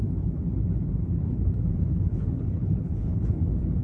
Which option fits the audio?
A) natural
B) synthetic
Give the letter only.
B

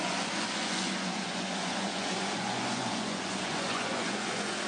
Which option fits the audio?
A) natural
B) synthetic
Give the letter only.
B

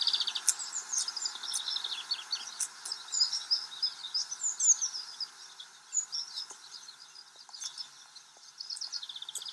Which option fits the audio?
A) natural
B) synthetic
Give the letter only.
A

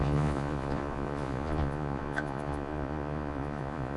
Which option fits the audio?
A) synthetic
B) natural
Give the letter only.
A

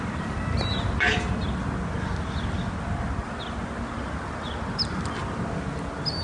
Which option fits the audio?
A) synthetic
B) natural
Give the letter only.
B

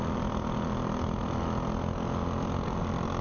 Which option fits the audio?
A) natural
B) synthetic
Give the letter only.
A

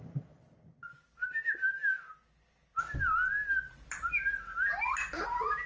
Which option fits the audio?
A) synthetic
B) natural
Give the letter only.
B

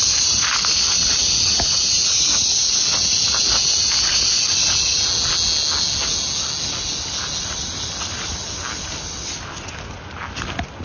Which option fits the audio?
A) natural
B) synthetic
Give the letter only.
A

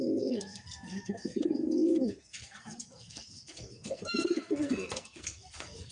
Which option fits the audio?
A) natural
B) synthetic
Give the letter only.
B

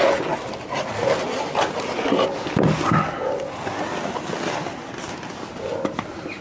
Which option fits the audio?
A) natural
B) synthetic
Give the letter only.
A